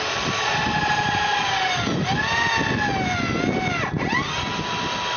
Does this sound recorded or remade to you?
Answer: recorded